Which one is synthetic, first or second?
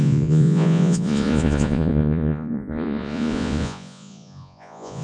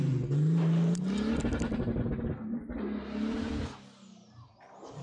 first